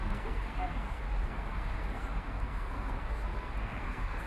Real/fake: fake